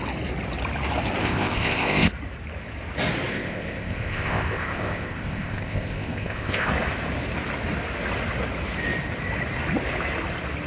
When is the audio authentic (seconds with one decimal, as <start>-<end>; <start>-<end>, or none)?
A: 0.0-1.2; 2.1-3.3; 6.7-10.7